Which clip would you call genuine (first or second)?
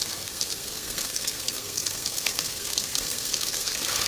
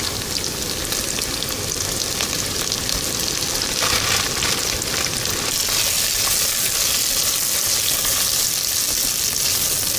second